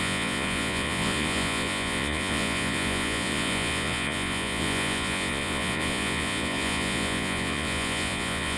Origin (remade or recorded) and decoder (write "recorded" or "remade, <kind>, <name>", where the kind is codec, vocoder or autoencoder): remade, vocoder, Vocos